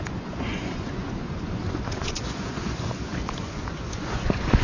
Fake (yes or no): yes